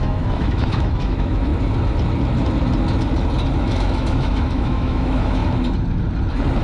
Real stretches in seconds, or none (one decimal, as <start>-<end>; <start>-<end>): 1.5-3.6; 5.4-6.6